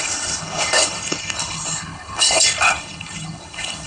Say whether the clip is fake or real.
fake